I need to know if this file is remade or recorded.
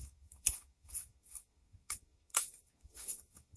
remade